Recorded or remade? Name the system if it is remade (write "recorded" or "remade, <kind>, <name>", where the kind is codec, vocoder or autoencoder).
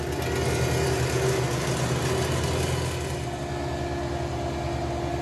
recorded